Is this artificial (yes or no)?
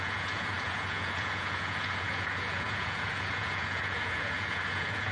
yes